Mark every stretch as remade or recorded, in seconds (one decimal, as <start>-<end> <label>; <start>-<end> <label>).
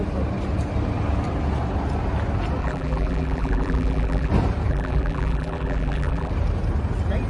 0.0-2.6 recorded; 2.6-4.3 remade; 4.3-4.7 recorded; 4.7-6.3 remade; 6.3-7.3 recorded